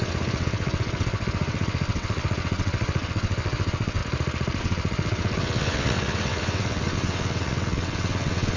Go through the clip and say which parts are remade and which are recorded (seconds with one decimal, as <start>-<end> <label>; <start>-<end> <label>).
0.0-4.0 remade; 4.0-4.6 recorded; 4.6-8.6 remade